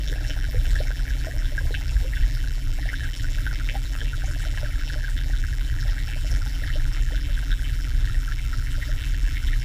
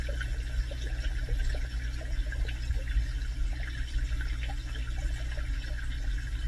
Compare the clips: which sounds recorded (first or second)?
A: second